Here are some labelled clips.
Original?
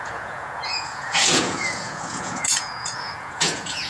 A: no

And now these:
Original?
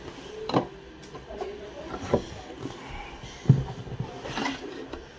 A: yes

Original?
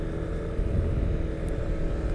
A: yes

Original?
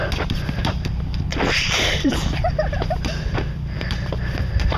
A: no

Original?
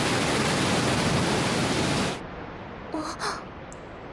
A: yes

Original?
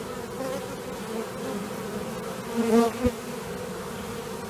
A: yes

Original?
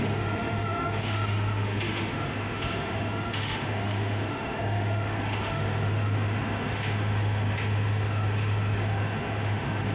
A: no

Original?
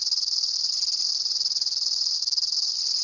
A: yes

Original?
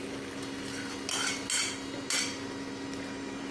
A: yes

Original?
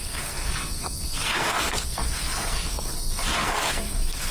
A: no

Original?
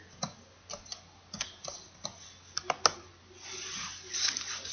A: yes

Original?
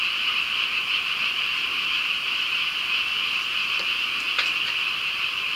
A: yes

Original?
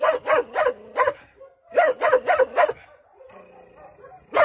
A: yes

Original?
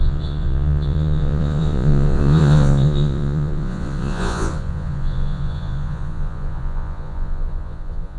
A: no